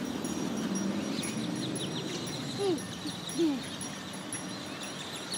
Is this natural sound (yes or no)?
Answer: yes